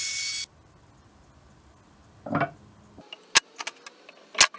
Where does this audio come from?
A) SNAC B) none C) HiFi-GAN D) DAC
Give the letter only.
B